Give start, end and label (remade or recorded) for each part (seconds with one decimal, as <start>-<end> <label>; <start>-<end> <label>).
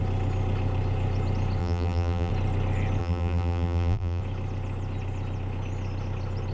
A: 0.0-1.6 recorded; 1.6-2.3 remade; 2.3-3.0 recorded; 3.0-4.2 remade; 4.2-6.5 recorded